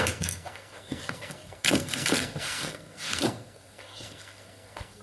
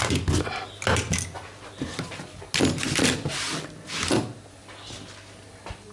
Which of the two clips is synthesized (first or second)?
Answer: first